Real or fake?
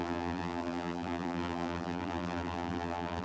fake